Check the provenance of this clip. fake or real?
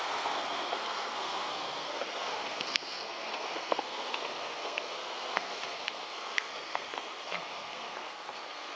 fake